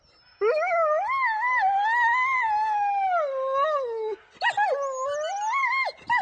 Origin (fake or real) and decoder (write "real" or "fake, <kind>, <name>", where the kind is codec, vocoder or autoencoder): real